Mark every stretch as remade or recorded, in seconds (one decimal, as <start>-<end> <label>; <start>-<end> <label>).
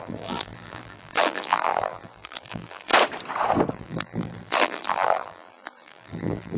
0.0-2.9 remade; 2.9-3.7 recorded; 3.7-6.6 remade